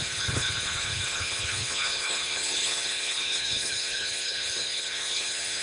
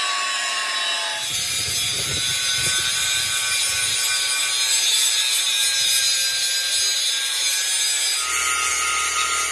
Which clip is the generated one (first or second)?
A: first